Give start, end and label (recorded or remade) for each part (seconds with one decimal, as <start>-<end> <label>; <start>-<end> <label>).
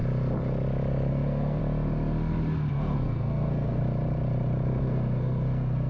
0.0-1.1 recorded; 1.1-1.6 remade; 1.6-2.7 recorded; 2.7-3.8 remade; 3.8-4.8 recorded; 4.8-5.9 remade